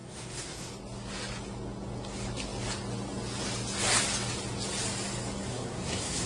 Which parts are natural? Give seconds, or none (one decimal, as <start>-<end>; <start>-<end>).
0.7-5.5